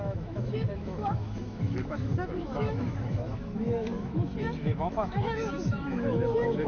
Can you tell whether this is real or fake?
fake